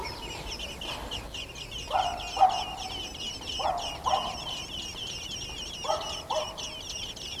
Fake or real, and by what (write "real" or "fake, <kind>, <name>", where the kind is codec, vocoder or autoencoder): real